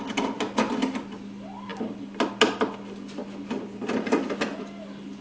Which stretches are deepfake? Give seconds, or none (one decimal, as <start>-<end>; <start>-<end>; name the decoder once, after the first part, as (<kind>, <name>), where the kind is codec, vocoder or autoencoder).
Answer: none